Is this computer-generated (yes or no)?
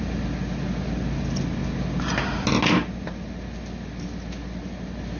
no